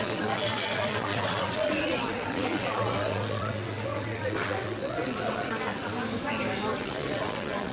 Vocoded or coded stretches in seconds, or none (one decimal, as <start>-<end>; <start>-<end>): 0.0-5.9; 6.8-7.7